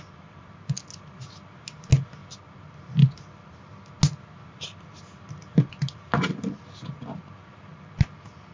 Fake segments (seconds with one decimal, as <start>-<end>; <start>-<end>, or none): none